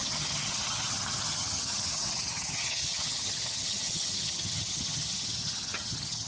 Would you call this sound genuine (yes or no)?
no